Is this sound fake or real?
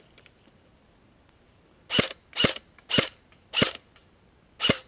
real